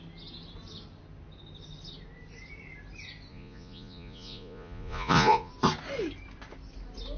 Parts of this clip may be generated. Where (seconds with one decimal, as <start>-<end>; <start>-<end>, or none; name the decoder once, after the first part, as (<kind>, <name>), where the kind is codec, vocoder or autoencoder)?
3.3-5.5 (vocoder, Vocos)